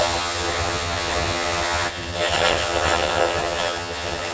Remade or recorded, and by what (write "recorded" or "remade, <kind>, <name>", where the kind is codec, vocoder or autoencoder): remade, vocoder, HiFi-GAN